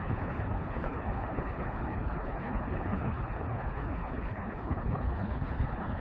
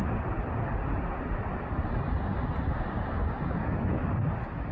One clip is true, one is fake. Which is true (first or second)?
second